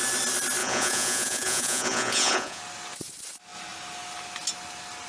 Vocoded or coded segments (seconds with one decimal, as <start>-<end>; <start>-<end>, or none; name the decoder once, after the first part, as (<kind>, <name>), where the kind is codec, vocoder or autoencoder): 0.6-2.6 (vocoder, Vocos)